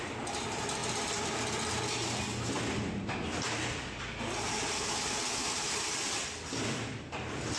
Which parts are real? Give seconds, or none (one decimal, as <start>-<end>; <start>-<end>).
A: 0.0-7.6